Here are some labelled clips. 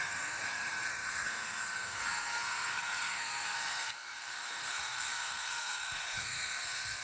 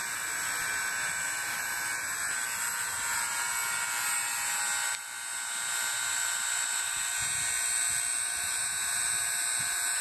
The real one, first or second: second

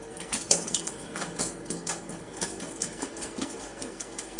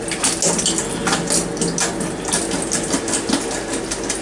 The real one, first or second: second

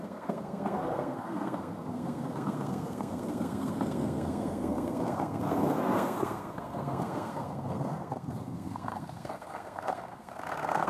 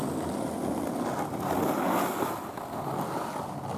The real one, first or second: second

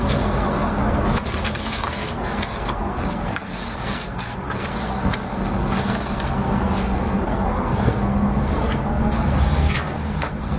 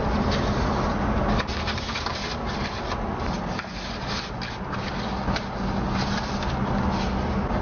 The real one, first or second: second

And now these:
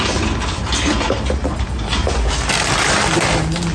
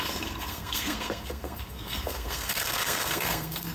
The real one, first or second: first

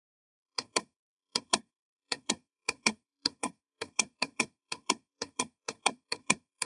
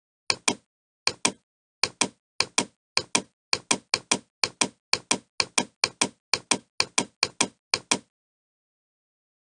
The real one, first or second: second